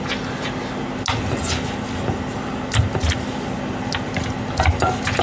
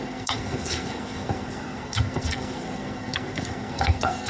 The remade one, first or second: second